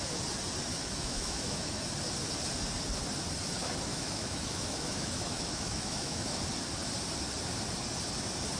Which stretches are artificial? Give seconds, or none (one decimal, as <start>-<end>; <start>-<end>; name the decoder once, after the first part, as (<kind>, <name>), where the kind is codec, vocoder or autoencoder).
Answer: 0.7-1.8 (autoencoder, DAC-VAE); 3.9-6.4